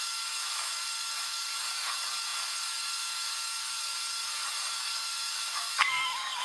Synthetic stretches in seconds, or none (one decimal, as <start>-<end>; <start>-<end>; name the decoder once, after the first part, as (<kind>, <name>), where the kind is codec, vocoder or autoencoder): 0.0-6.4 (codec, DAC)